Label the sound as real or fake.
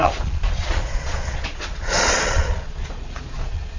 fake